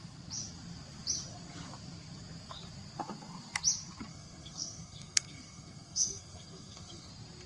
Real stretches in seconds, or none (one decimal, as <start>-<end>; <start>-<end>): 0.0-4.1; 7.1-7.5